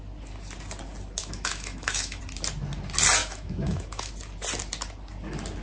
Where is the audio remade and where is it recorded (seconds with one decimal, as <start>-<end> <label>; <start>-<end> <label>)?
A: 0.0-1.2 recorded; 1.2-2.2 remade; 2.2-3.2 recorded; 3.2-4.1 remade; 4.1-5.6 recorded